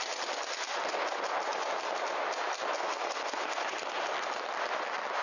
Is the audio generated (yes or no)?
no